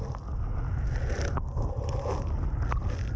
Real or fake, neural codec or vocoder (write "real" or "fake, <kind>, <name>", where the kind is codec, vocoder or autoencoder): real